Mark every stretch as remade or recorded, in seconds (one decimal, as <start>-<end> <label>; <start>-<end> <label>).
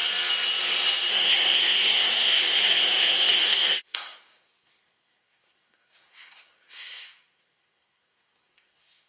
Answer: 0.0-1.1 recorded; 1.1-9.1 remade